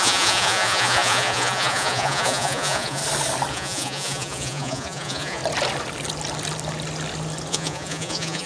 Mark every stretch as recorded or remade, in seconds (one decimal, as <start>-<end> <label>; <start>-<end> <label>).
0.0-3.0 remade; 3.0-3.5 recorded; 3.5-5.4 remade; 5.4-7.5 recorded; 7.5-8.5 remade